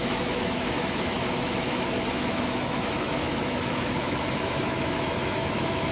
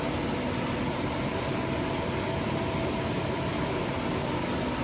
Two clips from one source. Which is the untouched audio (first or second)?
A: second